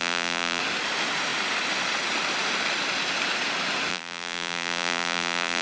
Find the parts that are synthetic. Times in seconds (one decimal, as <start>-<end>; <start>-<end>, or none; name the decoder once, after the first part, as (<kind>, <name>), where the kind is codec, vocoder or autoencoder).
0.0-0.6 (vocoder, BigVGAN v2); 3.9-5.6